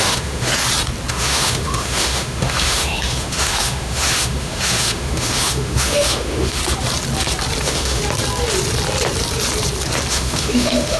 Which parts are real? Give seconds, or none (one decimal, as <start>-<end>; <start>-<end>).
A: 0.5-1.1; 6.6-7.6; 8.0-10.1